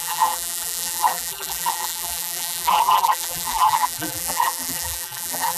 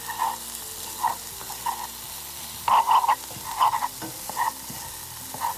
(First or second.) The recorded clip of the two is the second